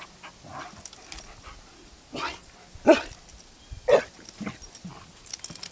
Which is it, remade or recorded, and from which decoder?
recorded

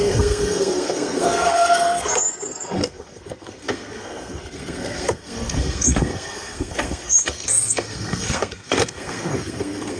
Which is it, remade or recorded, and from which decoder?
remade, codec, SNAC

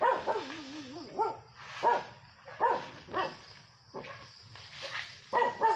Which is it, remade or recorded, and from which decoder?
recorded